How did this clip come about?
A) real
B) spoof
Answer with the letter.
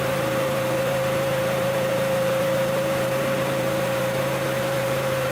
B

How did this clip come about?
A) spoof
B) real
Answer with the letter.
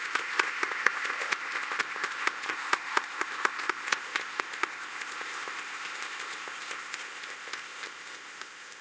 A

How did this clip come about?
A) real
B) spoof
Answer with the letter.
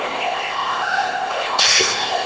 B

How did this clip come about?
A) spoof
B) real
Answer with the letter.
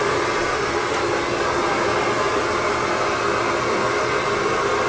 B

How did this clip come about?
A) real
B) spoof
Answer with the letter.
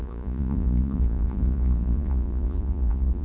B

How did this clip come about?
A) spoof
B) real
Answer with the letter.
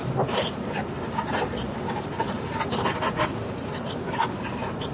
A